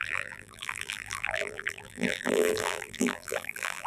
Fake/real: fake